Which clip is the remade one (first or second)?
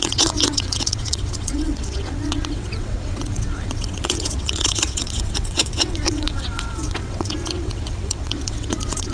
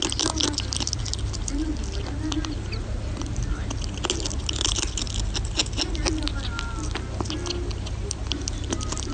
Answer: first